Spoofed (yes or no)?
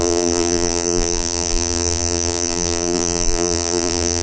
yes